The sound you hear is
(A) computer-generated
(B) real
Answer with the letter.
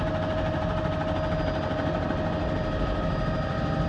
B